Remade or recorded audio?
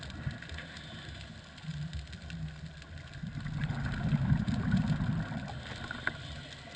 recorded